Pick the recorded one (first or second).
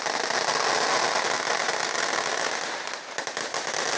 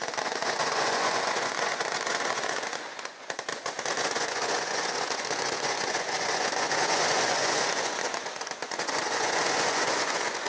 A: first